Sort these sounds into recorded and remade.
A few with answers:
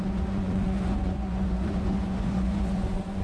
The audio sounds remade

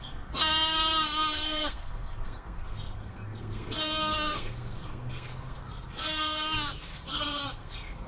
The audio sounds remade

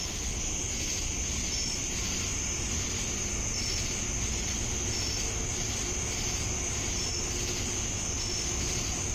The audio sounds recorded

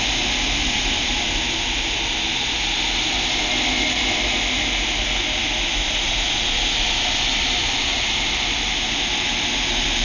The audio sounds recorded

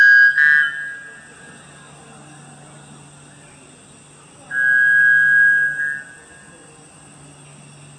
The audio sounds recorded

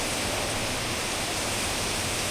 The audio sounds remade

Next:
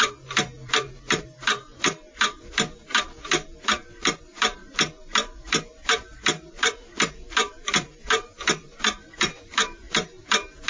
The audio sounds remade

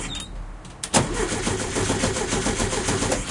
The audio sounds recorded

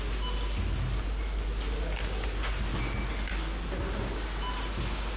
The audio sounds recorded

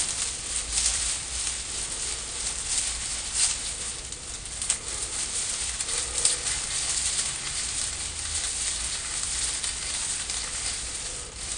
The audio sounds recorded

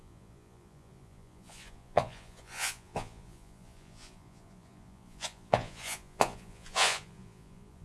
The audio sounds remade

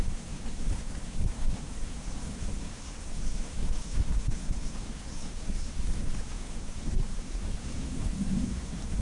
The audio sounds remade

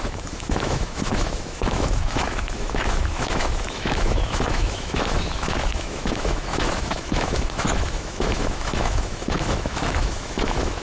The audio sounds remade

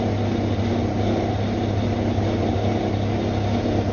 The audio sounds recorded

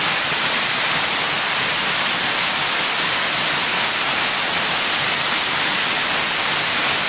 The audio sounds recorded